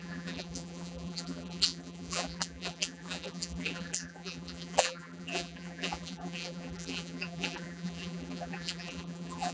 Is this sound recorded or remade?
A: remade